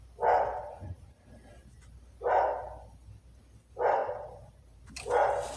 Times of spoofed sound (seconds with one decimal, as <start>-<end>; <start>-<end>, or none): 0.5-1.5; 4.0-4.9